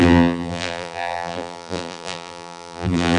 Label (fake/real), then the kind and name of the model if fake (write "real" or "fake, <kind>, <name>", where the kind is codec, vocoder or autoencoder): fake, vocoder, BigVGAN v2